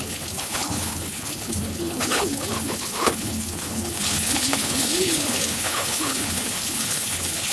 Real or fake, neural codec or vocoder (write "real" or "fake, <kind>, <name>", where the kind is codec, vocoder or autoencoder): fake, codec, HILCodec